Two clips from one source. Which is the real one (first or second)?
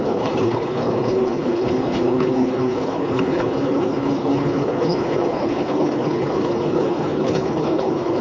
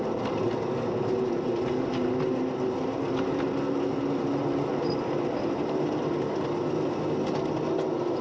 second